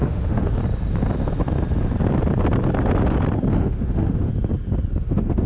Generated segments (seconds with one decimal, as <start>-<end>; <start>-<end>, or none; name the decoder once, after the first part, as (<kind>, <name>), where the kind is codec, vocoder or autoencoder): 0.0-0.6 (autoencoder, DAC-VAE); 3.5-4.3; 5.0-5.5